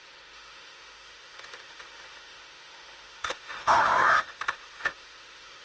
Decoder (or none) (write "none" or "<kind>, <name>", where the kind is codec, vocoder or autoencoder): autoencoder, DAC-VAE